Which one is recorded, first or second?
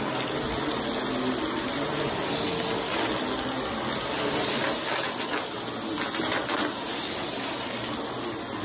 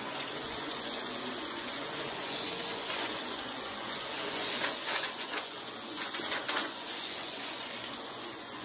first